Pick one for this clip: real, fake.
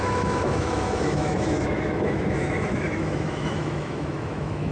fake